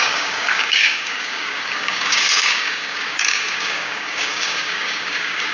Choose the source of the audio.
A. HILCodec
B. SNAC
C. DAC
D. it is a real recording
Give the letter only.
C